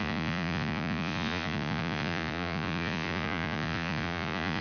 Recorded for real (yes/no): no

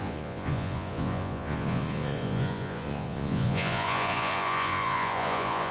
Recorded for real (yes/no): no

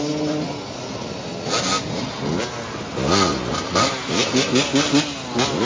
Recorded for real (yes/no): yes